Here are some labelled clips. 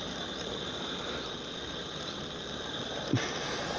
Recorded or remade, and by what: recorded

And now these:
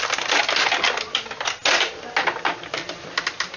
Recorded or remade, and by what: recorded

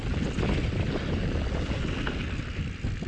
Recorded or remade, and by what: recorded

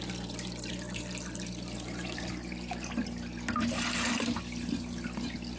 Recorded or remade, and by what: recorded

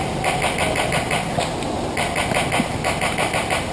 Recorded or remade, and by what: recorded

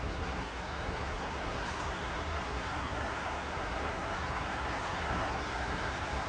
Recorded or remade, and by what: remade, codec, SNAC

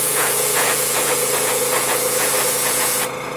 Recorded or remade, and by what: remade, vocoder, Vocos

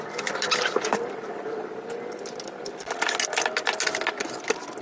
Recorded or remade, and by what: recorded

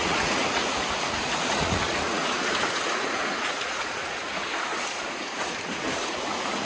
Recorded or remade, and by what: remade, vocoder, Vocos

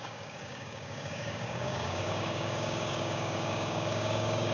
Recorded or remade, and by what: remade, codec, DAC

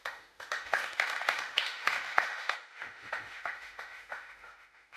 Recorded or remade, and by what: remade, autoencoder, DAC-VAE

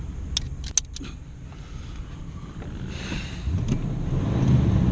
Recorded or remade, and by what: recorded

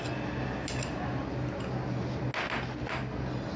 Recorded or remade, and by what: recorded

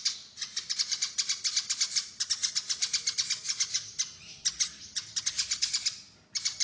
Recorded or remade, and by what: recorded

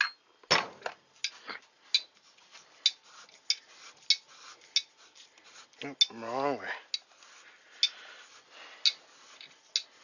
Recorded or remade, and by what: recorded